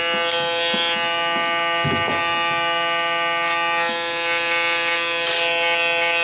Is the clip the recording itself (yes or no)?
yes